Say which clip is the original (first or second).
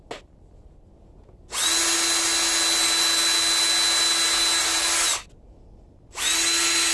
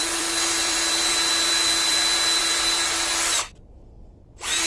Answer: first